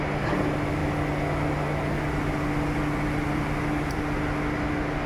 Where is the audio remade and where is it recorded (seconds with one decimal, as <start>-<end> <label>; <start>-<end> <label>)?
0.0-5.1 recorded